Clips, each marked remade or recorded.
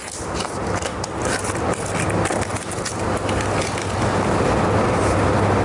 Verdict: recorded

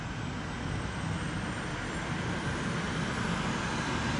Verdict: recorded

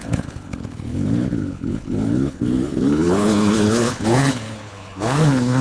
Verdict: remade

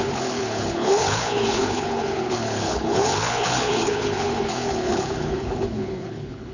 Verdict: remade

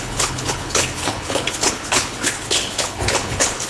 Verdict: remade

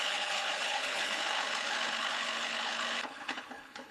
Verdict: remade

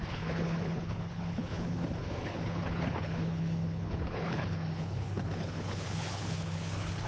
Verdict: remade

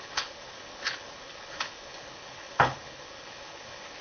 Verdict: remade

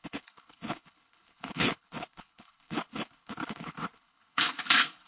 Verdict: remade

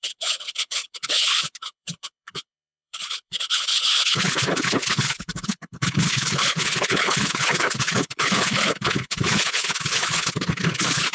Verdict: remade